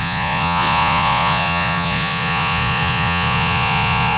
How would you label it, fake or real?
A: fake